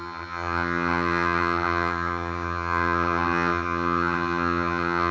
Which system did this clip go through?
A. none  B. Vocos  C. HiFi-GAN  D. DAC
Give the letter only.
C